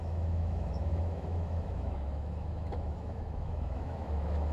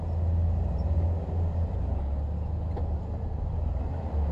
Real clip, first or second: second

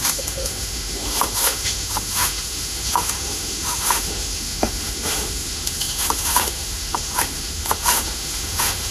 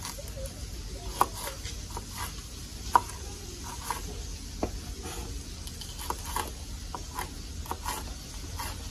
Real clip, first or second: second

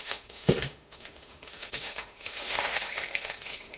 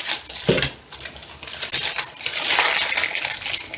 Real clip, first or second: second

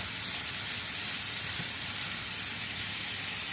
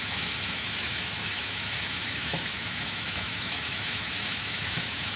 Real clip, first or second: first